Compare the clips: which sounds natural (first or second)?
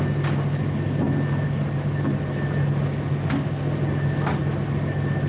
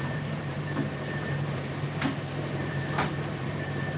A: first